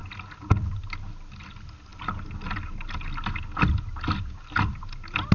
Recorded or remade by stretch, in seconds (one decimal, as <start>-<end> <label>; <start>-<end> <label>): 0.0-5.3 recorded